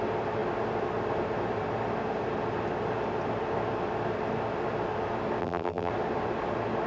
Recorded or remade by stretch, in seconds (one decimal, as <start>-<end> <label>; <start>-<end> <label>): 0.0-5.4 recorded; 5.4-5.9 remade; 5.9-6.9 recorded